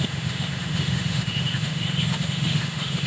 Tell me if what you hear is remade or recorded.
remade